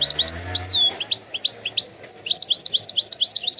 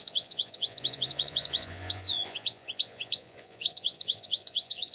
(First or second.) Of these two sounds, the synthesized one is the second